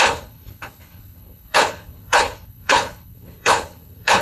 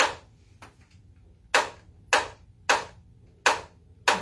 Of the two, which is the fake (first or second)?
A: first